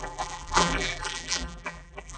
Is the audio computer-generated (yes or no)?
yes